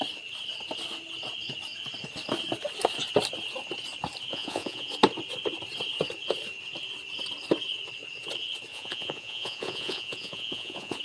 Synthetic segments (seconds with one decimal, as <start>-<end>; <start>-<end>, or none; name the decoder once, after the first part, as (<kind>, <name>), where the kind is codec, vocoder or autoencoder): 4.3-4.9 (vocoder, Vocos); 8.7-11.0